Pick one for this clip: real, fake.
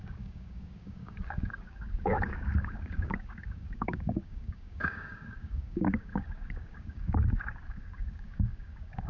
fake